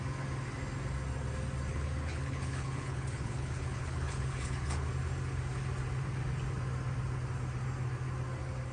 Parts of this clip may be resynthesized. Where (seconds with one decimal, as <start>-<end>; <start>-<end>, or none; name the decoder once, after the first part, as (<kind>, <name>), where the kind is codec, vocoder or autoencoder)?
1.7-4.9 (codec, HILCodec)